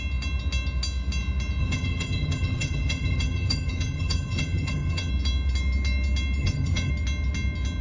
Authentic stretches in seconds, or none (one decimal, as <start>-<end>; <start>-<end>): 0.0-1.6; 5.1-6.4; 6.9-7.8